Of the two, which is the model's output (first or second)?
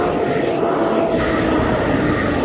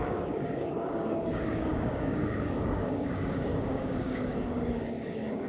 second